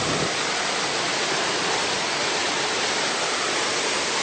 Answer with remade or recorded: recorded